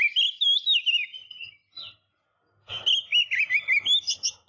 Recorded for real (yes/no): yes